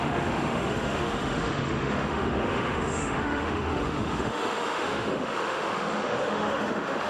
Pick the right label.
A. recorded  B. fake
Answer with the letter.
B